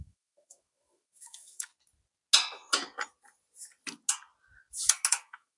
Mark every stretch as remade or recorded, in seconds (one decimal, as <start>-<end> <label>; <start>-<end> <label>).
0.0-1.7 remade; 1.7-5.1 recorded; 5.1-5.6 remade